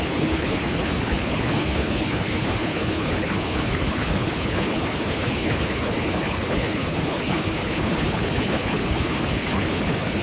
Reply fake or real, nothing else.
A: fake